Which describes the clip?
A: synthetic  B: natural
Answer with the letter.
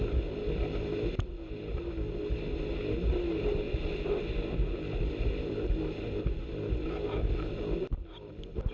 B